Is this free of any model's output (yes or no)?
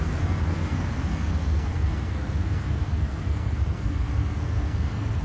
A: no